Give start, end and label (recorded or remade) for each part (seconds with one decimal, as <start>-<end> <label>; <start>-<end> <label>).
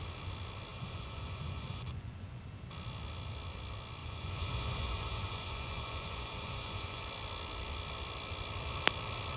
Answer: 0.0-0.7 recorded; 0.7-2.4 remade; 2.4-4.0 recorded; 4.0-7.0 remade; 7.0-9.4 recorded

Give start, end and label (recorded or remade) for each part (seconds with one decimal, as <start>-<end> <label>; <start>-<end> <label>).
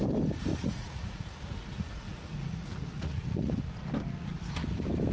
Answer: 0.0-0.5 recorded; 0.5-3.6 remade; 3.6-5.1 recorded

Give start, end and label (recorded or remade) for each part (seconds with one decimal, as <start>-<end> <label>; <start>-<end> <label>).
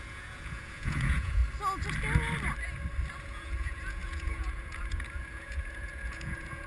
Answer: 0.0-1.4 remade; 1.4-3.2 recorded; 3.2-6.7 remade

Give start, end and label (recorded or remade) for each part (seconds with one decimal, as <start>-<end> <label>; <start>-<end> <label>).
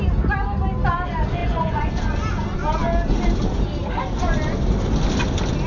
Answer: 0.0-1.4 recorded; 1.4-1.9 remade; 1.9-5.7 recorded